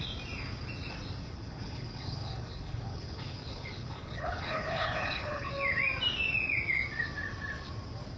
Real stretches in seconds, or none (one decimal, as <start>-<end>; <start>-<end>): 0.0-1.2; 5.5-8.2